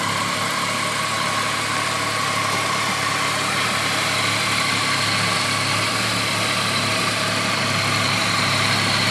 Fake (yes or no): no